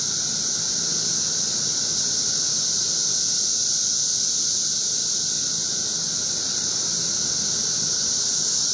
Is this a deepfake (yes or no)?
no